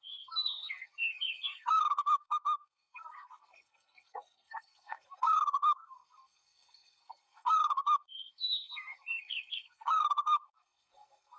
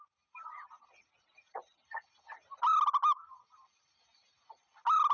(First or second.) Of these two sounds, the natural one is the second